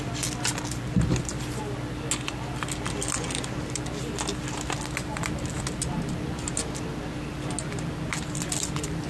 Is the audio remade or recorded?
recorded